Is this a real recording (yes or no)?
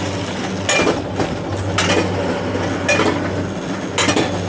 yes